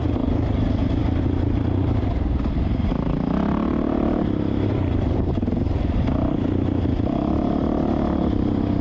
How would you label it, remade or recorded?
recorded